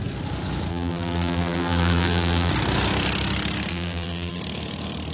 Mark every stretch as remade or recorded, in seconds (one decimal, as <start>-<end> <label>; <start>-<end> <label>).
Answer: 0.0-0.7 recorded; 0.7-2.5 remade; 2.5-3.7 recorded; 3.7-4.4 remade; 4.4-5.1 recorded